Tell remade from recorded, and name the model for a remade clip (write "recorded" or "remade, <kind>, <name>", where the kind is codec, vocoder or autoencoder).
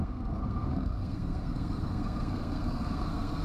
remade, codec, SNAC